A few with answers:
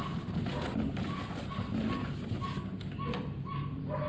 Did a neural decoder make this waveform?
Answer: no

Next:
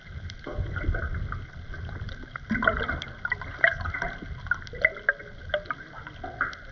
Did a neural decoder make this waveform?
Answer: no